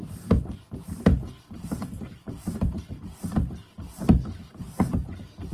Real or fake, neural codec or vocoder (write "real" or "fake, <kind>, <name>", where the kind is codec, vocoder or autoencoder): fake, vocoder, BigVGAN v2